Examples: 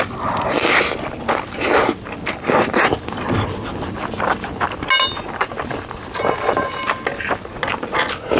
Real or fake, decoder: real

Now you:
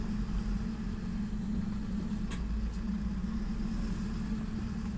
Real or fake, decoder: real